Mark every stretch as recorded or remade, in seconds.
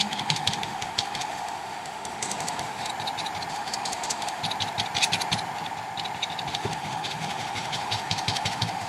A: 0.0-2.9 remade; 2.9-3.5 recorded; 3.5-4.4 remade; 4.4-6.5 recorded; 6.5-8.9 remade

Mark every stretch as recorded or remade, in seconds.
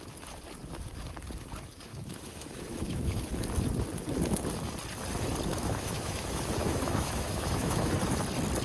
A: 0.0-1.9 recorded; 1.9-3.3 remade; 3.3-5.5 recorded; 5.5-7.9 remade; 7.9-8.6 recorded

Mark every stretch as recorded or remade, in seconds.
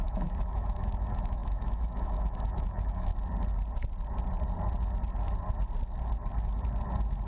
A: 0.0-3.1 remade; 3.1-7.3 recorded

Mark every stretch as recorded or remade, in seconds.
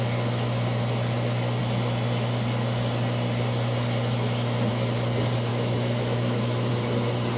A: 0.0-5.5 recorded; 5.5-6.7 remade; 6.7-7.4 recorded